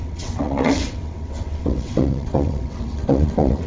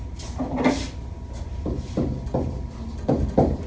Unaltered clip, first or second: second